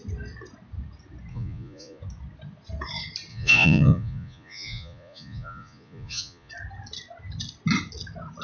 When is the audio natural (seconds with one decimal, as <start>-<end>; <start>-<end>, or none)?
0.0-1.3; 2.0-3.3; 6.5-8.4